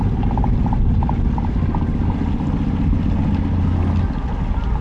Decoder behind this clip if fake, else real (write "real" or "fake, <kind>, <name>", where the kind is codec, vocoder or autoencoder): real